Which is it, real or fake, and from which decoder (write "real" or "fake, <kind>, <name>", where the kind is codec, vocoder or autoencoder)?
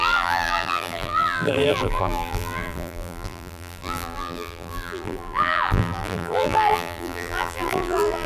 fake, vocoder, BigVGAN v2